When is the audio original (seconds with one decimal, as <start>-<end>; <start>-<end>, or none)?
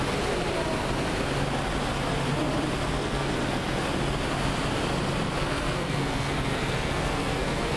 0.0-3.0; 3.8-5.4